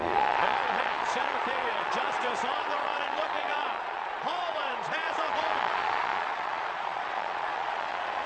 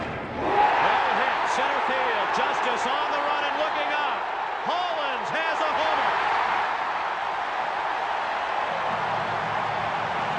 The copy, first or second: first